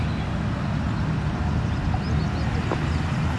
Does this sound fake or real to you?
real